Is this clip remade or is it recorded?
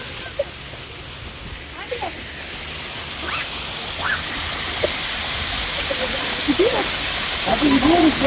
recorded